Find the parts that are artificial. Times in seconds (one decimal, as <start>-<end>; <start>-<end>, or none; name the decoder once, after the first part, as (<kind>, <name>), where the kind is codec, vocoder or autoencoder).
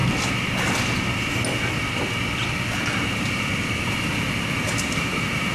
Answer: none